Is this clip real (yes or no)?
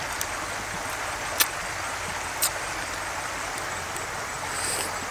yes